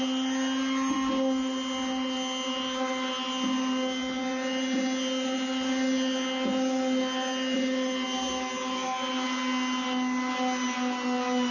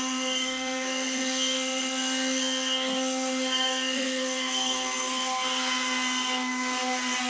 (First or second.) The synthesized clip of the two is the second